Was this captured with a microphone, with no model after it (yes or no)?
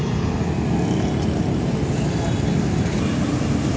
yes